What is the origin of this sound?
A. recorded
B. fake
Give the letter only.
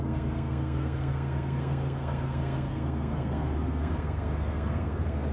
B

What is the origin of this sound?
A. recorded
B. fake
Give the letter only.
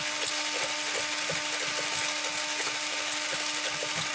A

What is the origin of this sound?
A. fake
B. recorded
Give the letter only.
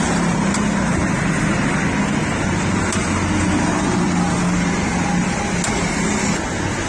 B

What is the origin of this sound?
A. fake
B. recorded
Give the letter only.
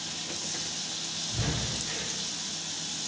B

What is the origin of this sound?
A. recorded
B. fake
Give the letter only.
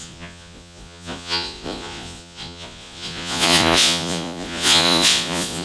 B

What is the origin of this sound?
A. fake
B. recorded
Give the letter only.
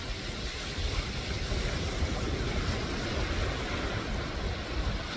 B